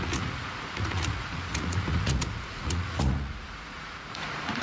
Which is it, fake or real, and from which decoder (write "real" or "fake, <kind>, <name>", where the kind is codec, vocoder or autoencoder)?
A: fake, vocoder, Vocos